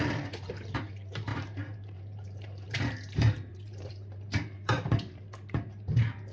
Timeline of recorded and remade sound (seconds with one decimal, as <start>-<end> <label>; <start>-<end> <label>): 0.0-6.3 remade